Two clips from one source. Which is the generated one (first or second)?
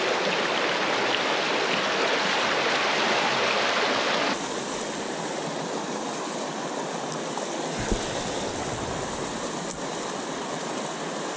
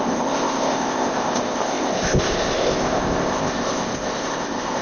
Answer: second